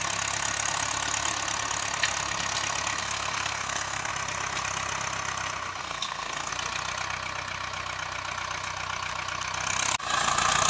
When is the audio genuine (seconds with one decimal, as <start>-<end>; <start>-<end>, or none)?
0.0-3.0; 4.1-5.8; 6.5-10.7